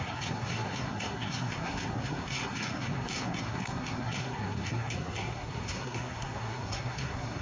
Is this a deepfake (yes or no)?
yes